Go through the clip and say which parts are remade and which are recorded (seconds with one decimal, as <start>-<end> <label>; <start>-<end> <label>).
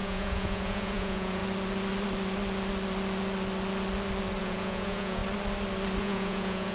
0.0-1.4 remade; 1.4-4.4 recorded; 4.4-5.2 remade; 5.2-6.0 recorded; 6.0-6.7 remade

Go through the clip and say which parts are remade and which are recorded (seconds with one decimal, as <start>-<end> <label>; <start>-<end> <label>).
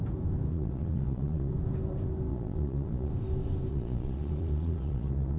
0.0-0.5 recorded; 0.5-1.5 remade; 1.5-2.3 recorded; 2.3-3.1 remade; 3.1-3.7 recorded; 3.7-5.4 remade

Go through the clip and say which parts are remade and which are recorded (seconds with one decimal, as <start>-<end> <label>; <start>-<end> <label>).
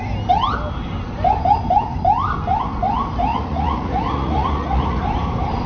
0.0-3.3 recorded; 3.3-5.0 remade; 5.0-5.7 recorded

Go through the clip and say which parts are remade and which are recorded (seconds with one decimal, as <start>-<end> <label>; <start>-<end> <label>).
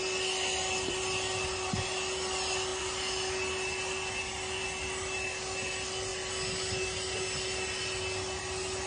0.0-8.9 recorded